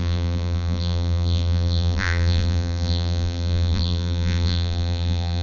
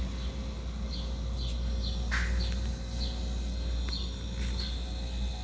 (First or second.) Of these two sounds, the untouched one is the second